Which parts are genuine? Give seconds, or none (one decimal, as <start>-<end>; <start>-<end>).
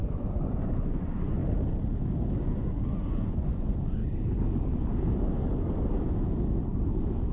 1.4-2.4; 4.0-7.3